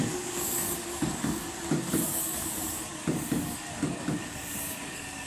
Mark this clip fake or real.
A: fake